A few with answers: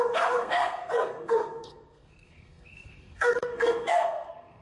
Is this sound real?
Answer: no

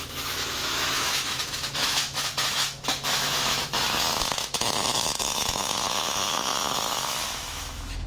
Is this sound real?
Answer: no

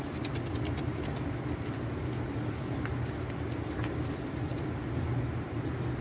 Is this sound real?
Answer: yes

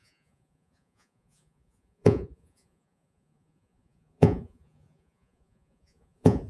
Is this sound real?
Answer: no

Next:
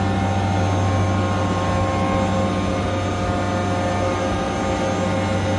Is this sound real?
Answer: yes